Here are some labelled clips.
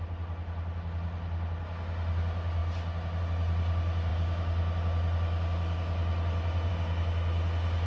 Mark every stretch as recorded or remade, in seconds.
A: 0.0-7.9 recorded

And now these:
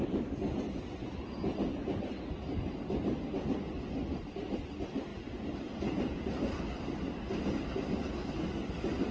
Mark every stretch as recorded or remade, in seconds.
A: 0.0-9.1 recorded

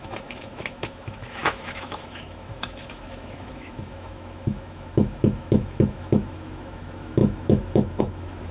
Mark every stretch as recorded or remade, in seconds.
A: 0.0-8.5 remade

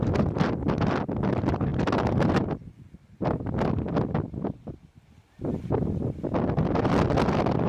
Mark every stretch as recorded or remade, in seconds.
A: 0.0-7.7 recorded